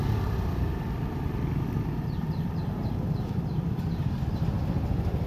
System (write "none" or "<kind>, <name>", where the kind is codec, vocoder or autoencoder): none